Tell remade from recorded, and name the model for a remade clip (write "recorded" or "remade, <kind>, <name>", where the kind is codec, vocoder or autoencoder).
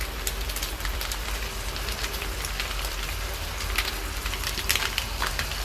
remade, vocoder, BigVGAN v2